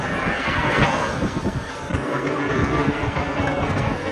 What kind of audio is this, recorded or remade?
remade